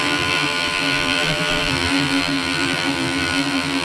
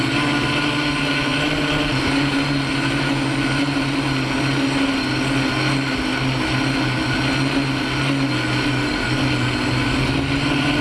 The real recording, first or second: second